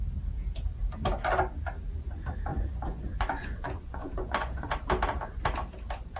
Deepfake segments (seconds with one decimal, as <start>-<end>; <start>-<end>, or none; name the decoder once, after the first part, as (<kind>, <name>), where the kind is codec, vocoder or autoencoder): 2.5-4.7 (vocoder, Vocos)